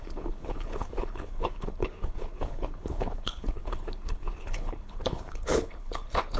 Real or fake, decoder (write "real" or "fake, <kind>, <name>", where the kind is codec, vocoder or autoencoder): fake, codec, HILCodec